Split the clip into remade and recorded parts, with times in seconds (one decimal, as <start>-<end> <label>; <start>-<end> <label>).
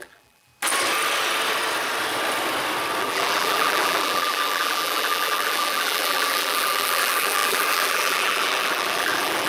0.0-0.5 remade; 0.5-3.0 recorded; 3.0-9.5 remade